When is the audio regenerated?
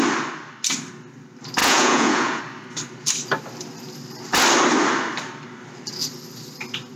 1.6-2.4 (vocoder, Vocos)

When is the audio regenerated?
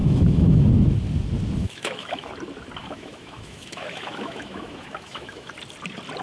0.0-0.7 (autoencoder, DAC-VAE); 1.6-2.3; 2.8-5.5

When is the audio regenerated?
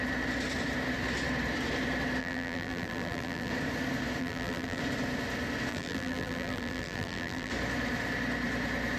2.2-3.5 (vocoder, BigVGAN v2); 4.2-4.8; 5.7-7.5